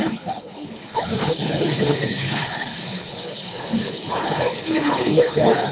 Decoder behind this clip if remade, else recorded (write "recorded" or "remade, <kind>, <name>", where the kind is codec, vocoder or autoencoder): remade, codec, HILCodec